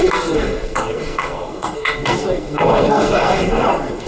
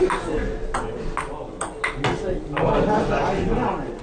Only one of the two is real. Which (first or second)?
second